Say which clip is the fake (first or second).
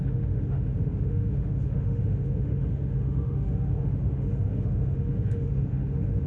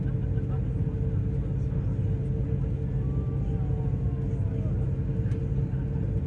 first